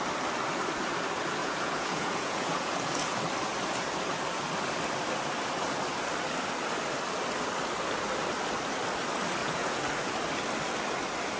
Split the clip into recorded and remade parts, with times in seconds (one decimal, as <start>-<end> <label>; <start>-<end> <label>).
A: 0.0-1.4 recorded; 1.4-3.2 remade; 3.2-9.4 recorded; 9.4-10.1 remade; 10.1-11.4 recorded